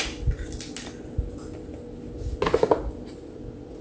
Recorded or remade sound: recorded